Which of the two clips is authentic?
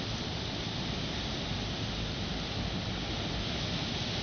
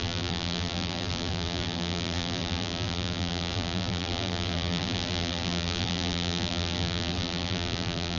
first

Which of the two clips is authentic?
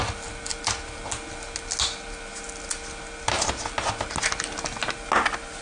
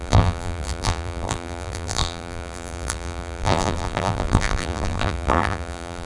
first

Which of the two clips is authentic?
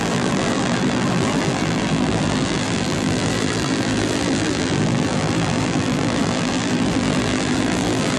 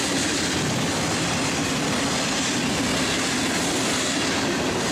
second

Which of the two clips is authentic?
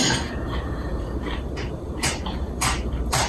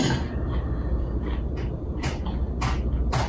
second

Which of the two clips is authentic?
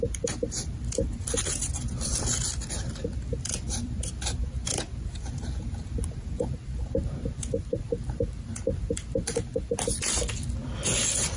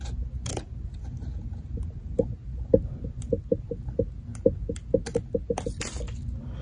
second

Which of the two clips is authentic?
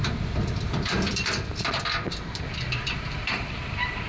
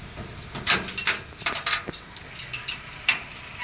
second